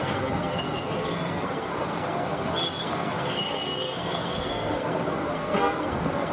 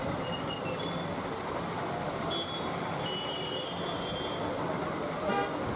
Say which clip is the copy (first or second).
first